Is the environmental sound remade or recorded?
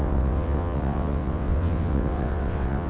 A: remade